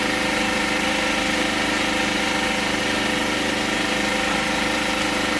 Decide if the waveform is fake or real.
real